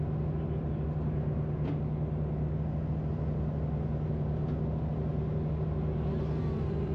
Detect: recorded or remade recorded